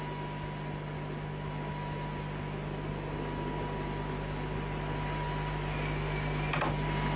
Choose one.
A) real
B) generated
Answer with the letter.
A